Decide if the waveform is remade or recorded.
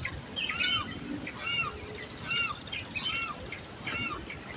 recorded